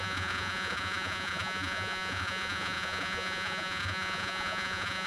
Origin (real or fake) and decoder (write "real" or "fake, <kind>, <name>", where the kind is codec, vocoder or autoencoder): fake, vocoder, Vocos